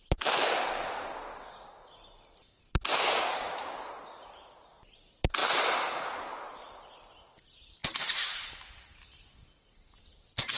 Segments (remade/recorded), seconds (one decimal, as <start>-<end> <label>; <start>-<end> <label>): 0.0-1.3 recorded; 1.3-1.8 remade; 1.8-2.9 recorded; 2.9-3.5 remade; 3.5-10.6 recorded